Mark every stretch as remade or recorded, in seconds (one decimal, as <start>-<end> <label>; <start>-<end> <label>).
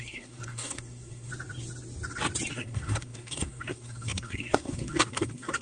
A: 0.0-1.3 remade; 1.3-2.5 recorded; 2.5-5.6 remade